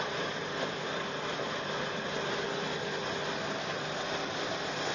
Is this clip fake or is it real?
real